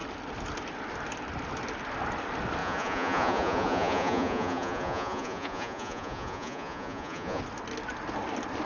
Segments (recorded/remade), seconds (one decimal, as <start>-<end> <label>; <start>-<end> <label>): 0.0-2.6 recorded; 2.6-7.4 remade; 7.4-8.7 recorded

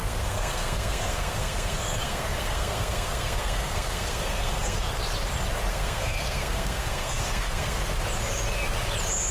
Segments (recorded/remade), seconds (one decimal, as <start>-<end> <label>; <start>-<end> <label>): 0.0-4.9 remade; 4.9-5.7 recorded; 5.7-7.8 remade; 7.8-9.3 recorded